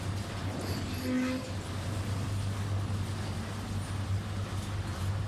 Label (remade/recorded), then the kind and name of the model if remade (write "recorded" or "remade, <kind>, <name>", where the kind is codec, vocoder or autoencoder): recorded